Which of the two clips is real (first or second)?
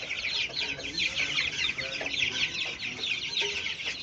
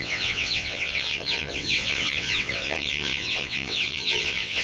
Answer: first